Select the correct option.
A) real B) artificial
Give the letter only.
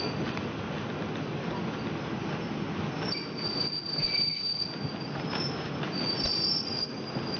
A